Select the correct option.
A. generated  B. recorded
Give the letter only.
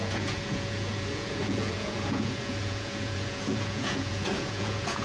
A